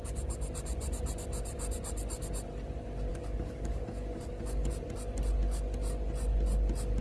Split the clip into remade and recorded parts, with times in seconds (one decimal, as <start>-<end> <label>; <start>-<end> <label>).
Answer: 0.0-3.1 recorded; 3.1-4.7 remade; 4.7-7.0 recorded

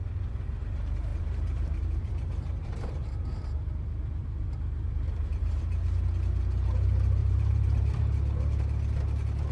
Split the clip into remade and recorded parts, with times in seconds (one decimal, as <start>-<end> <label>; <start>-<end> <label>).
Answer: 0.0-1.1 recorded; 1.1-3.7 remade; 3.7-4.2 recorded; 4.2-5.6 remade; 5.6-7.2 recorded; 7.2-8.0 remade; 8.0-9.5 recorded

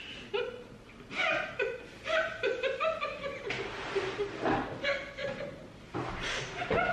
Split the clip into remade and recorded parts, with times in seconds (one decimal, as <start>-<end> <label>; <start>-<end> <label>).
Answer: 0.0-6.9 recorded

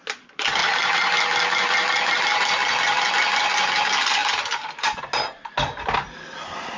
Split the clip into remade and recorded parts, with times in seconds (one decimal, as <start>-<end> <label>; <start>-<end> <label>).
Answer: 0.0-6.8 recorded